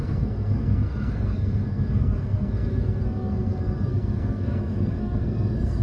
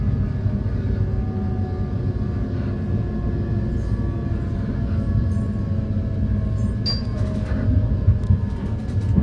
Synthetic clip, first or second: first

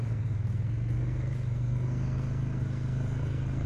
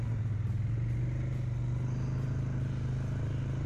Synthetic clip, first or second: first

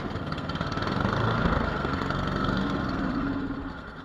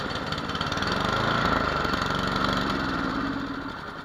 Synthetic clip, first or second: first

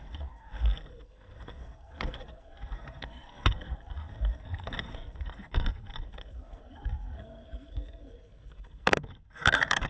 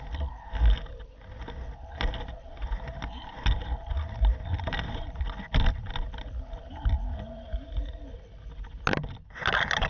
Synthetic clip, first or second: first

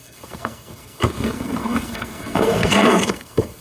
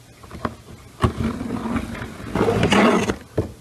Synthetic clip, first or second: first